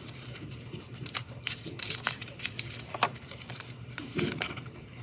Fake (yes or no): yes